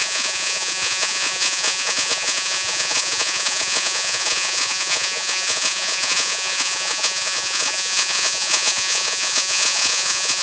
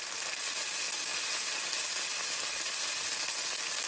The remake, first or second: first